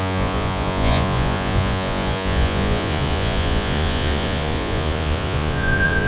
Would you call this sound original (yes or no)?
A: no